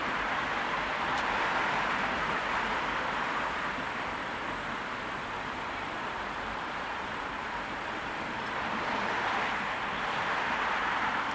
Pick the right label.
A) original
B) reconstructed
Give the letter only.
B